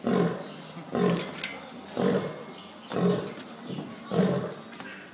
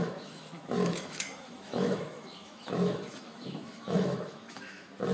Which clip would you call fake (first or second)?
second